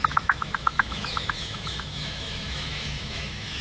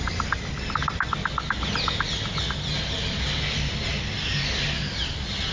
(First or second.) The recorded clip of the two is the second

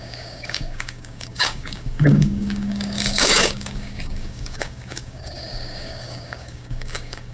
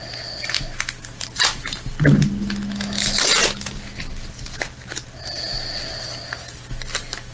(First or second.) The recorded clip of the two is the second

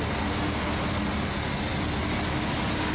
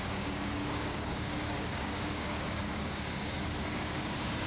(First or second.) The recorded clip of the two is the first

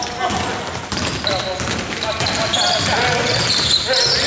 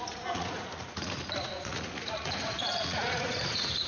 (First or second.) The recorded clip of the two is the first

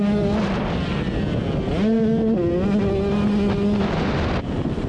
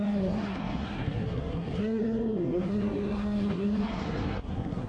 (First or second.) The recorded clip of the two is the first